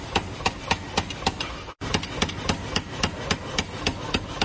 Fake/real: real